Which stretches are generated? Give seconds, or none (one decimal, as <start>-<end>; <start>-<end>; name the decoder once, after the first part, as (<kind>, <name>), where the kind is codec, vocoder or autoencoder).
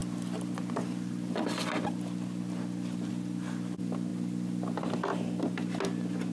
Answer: none